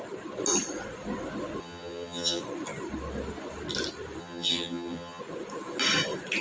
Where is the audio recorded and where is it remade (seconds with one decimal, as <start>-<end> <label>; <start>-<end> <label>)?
0.0-1.6 recorded; 1.6-2.4 remade; 2.4-4.2 recorded; 4.2-5.2 remade; 5.2-6.4 recorded